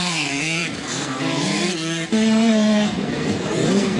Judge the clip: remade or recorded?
remade